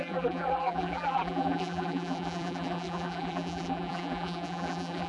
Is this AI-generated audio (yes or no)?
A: yes